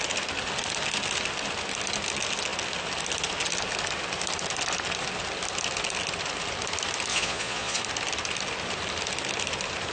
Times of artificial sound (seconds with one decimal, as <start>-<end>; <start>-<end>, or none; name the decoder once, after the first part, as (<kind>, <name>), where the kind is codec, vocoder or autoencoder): 7.1-7.8 (vocoder, Vocos)